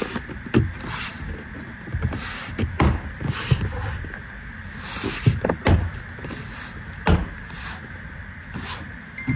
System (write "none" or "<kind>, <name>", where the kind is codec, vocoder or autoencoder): none